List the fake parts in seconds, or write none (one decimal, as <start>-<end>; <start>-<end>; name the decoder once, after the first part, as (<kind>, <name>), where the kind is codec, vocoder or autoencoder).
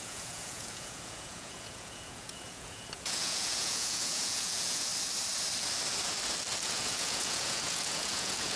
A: 0.0-4.9 (vocoder, Vocos); 6.6-8.6